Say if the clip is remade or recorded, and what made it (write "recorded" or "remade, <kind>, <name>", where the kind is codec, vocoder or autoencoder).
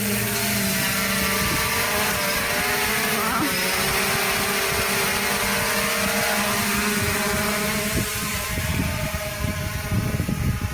recorded